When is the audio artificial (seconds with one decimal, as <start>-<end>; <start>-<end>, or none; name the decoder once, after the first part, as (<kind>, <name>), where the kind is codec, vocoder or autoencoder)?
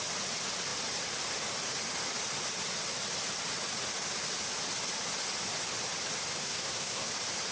6.4-7.1 (codec, SNAC)